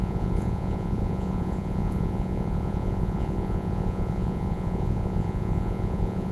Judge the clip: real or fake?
fake